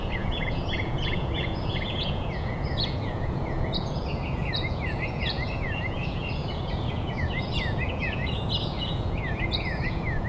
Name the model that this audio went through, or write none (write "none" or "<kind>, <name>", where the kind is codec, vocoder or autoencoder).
vocoder, Vocos